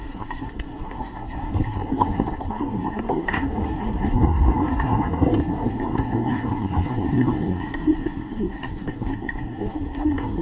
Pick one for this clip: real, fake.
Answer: fake